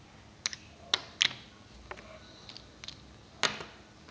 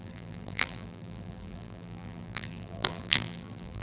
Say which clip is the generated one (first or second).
second